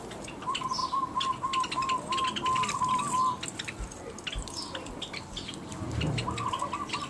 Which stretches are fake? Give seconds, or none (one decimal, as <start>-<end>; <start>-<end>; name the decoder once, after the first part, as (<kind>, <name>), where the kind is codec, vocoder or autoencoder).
none